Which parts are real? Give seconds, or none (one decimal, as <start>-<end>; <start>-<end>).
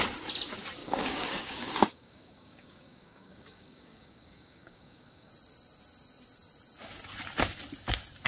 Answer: 0.0-0.8; 5.3-8.3